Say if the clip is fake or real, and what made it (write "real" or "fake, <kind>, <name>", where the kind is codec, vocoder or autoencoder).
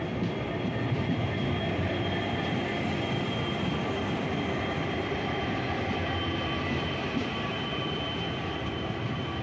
fake, vocoder, BigVGAN v2